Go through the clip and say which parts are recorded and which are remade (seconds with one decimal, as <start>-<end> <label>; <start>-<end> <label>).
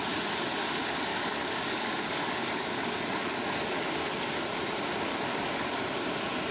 0.0-1.1 recorded; 1.1-3.8 remade; 3.8-5.1 recorded; 5.1-5.8 remade; 5.8-6.5 recorded